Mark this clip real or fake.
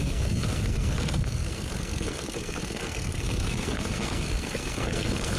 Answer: fake